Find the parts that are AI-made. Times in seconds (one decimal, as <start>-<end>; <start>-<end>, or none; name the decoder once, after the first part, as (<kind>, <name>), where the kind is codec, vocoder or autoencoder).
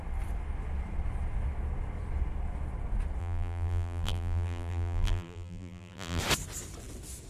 3.2-6.2 (vocoder, BigVGAN v2)